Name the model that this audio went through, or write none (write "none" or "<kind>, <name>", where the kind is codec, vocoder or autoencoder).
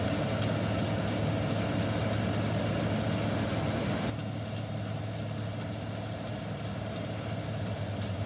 none